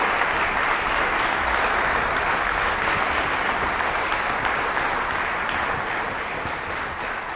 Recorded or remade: recorded